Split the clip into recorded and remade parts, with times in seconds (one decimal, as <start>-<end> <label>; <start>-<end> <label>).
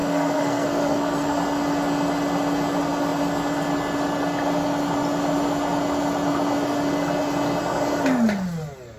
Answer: 0.0-1.3 remade; 1.3-9.0 recorded